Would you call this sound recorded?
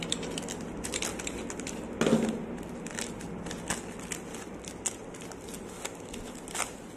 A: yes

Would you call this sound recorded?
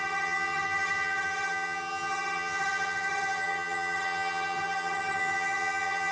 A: no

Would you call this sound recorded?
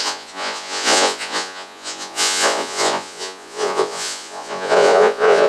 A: no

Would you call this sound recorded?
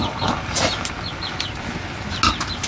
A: yes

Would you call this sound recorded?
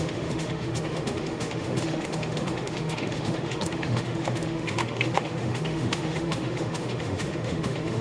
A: no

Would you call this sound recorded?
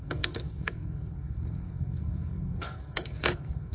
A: no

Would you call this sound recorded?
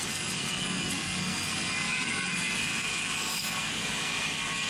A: no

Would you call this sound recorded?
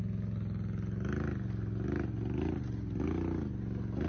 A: yes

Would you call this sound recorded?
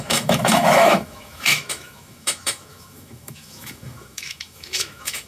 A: no